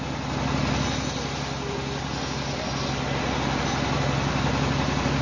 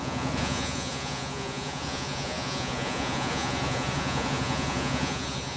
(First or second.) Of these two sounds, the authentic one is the first